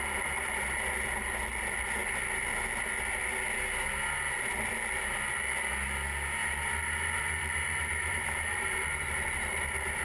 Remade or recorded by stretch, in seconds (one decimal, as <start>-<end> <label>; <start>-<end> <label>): 0.0-6.4 recorded; 6.4-10.0 remade